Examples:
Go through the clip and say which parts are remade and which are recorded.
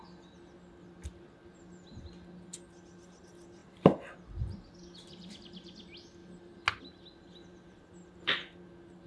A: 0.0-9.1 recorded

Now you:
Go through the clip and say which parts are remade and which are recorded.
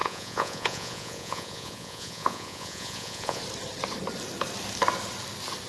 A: 0.0-3.4 remade; 3.4-5.7 recorded